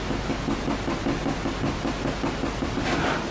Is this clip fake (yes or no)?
no